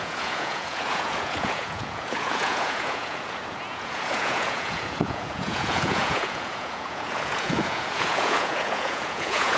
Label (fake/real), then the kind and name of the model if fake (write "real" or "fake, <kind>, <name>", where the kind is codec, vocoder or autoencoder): fake, vocoder, Vocos